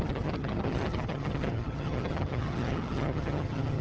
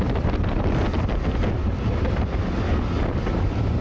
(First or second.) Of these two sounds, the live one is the second